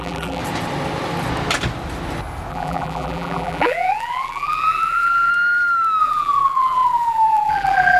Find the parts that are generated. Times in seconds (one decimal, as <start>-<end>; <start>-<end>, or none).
0.0-0.4; 2.5-5.3; 6.0-8.0